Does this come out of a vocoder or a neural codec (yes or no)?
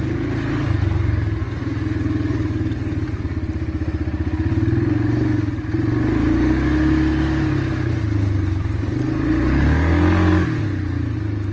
no